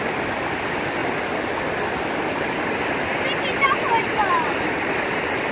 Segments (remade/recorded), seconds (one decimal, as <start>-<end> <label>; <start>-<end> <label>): 0.0-1.0 remade; 1.0-4.3 recorded; 4.3-5.5 remade